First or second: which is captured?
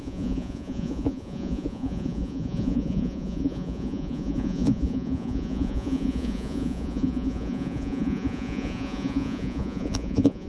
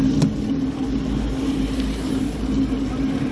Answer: second